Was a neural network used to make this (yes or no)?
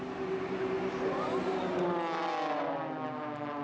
no